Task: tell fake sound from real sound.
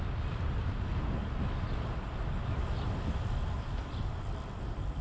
real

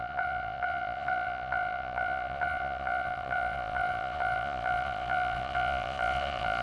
fake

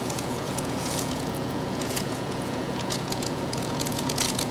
fake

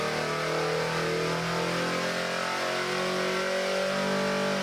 real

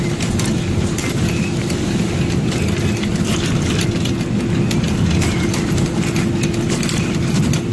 real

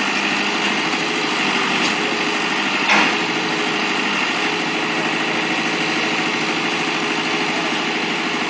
real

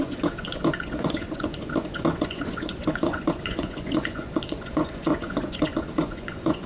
fake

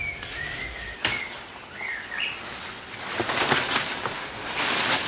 real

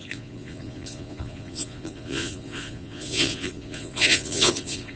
fake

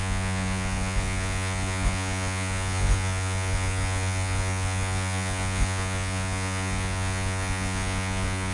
fake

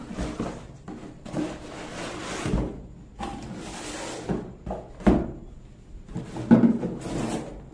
real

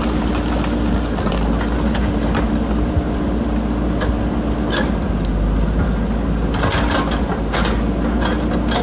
real